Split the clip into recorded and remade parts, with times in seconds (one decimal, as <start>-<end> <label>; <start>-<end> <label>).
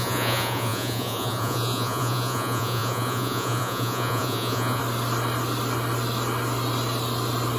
0.0-4.8 remade; 4.8-7.6 recorded